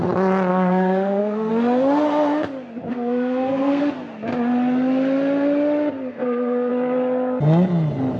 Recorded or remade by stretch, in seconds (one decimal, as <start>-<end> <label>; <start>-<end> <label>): 0.0-0.5 recorded; 0.5-1.5 remade; 1.5-2.9 recorded; 2.9-3.8 remade; 3.8-6.1 recorded; 6.1-6.7 remade; 6.7-8.2 recorded